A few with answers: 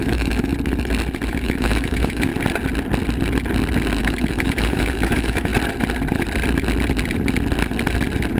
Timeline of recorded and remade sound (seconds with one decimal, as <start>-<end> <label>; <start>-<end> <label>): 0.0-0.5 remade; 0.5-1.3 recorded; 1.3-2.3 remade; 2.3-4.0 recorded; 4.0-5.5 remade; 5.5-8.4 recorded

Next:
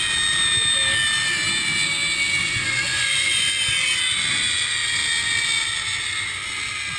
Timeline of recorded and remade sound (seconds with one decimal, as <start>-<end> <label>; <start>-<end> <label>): 0.0-2.4 recorded; 2.4-3.5 remade; 3.5-7.0 recorded

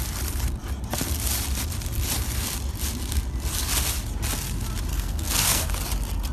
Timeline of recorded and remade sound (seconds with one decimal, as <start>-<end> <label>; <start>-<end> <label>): 0.0-4.9 recorded; 4.9-5.7 remade; 5.7-6.3 recorded

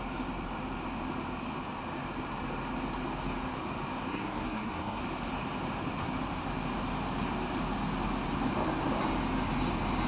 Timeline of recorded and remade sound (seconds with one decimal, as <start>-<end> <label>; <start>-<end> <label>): 0.0-4.1 recorded; 4.1-5.0 remade; 5.0-10.1 recorded

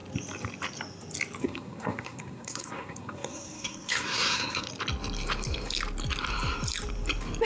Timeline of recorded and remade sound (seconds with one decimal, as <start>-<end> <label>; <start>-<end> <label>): 0.0-1.4 recorded; 1.4-4.7 remade; 4.7-7.4 recorded

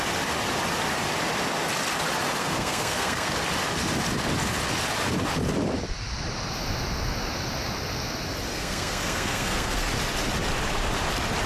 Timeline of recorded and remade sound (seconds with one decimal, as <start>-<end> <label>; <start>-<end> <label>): 0.0-2.4 recorded; 2.4-3.3 remade; 3.3-8.5 recorded; 8.5-9.9 remade; 9.9-11.5 recorded

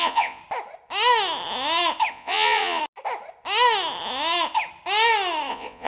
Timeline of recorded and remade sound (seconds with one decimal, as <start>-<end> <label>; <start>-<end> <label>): 0.0-0.4 remade; 0.4-2.1 recorded; 2.1-2.8 remade; 2.8-5.5 recorded; 5.5-5.9 remade

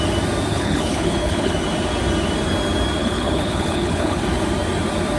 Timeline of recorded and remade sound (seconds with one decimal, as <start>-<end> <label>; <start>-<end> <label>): 0.0-0.5 recorded; 0.5-1.5 remade; 1.5-3.0 recorded; 3.0-4.2 remade; 4.2-5.2 recorded